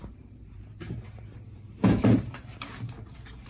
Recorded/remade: remade